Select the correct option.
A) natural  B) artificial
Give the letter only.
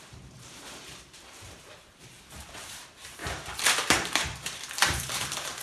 B